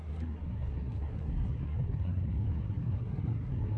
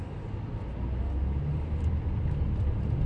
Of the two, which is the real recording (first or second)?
second